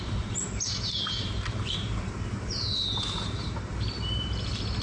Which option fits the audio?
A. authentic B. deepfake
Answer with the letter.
B